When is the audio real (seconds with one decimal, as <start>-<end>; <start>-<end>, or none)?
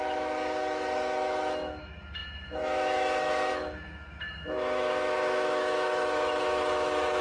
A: none